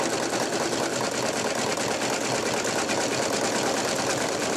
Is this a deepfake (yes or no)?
no